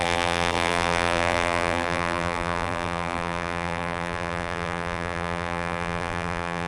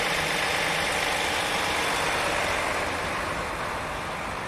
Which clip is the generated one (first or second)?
first